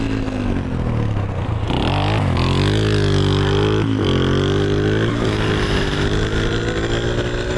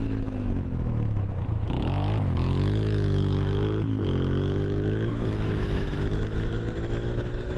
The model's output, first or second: second